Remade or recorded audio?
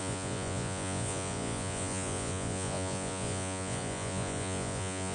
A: remade